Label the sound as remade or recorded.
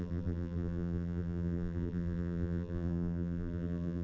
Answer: remade